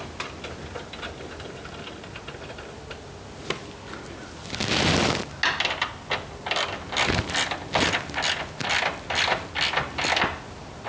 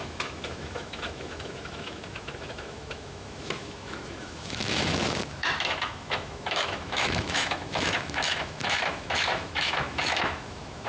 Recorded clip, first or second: first